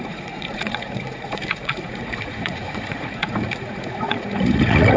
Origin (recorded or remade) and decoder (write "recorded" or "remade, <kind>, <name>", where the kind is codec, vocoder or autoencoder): remade, vocoder, Vocos